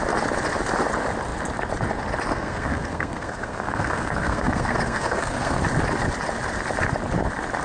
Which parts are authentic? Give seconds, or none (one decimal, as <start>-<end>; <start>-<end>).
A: 0.0-2.3; 5.6-7.6